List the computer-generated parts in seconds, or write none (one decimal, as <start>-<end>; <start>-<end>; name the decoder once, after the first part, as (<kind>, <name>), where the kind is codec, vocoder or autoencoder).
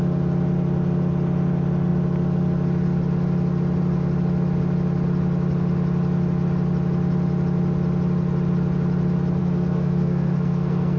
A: 9.4-11.0 (codec, SNAC)